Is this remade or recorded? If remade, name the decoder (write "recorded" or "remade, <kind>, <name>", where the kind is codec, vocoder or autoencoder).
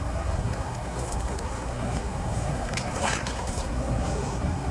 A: remade, codec, SNAC